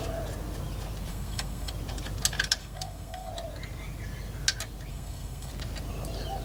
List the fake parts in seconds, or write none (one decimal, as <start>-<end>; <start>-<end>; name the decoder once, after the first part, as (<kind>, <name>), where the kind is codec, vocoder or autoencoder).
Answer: 1.1-1.7 (codec, SNAC); 2.6-3.3; 4.9-5.5